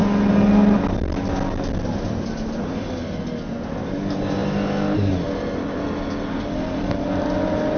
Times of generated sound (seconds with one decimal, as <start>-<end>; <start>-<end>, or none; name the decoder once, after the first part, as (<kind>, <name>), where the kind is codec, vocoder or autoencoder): none